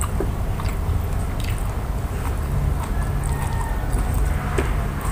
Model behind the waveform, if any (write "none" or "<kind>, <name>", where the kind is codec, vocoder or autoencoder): none